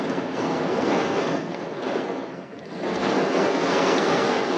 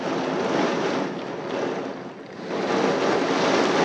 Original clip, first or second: second